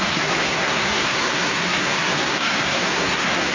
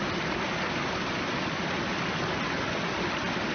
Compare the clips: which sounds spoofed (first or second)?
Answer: first